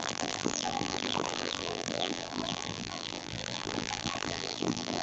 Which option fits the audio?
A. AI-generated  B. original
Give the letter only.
A